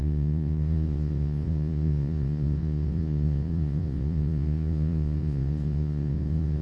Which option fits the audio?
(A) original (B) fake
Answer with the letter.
B